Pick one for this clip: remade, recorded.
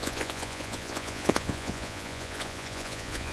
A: remade